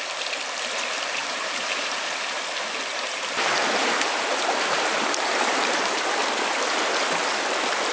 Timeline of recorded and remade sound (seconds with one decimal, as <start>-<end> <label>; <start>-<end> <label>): 0.0-1.2 recorded; 1.2-2.0 remade; 2.0-2.9 recorded; 2.9-6.2 remade; 6.2-7.9 recorded